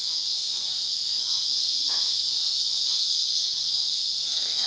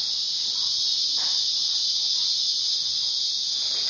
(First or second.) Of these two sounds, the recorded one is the second